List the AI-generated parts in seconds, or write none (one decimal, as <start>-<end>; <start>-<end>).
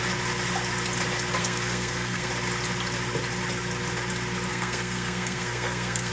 1.4-2.3; 4.5-6.1